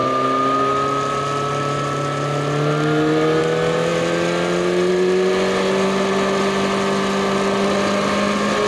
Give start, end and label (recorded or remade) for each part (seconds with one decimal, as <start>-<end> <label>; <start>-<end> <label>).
0.0-8.7 recorded